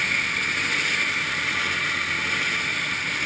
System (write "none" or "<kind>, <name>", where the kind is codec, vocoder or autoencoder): none